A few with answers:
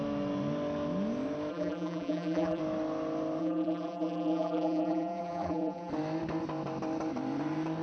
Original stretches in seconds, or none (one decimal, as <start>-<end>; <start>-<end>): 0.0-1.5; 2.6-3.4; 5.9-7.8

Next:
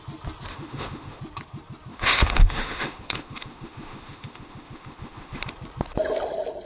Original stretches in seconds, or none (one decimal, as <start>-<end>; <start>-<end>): 0.0-0.5; 1.2-1.9; 5.4-6.7

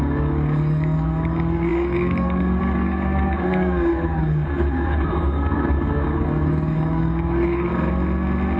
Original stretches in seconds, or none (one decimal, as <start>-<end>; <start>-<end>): 7.7-8.6

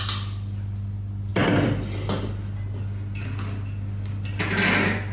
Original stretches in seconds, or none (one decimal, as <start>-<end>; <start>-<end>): 0.0-5.1

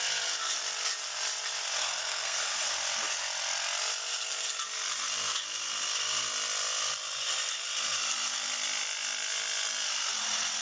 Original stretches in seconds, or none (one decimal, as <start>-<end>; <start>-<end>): 0.0-1.8; 2.7-10.6